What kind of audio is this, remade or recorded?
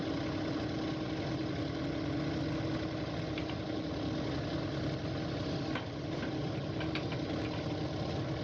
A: recorded